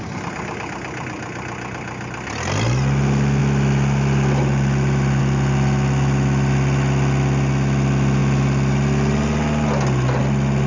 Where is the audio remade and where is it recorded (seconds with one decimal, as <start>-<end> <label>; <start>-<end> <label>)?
0.0-10.7 recorded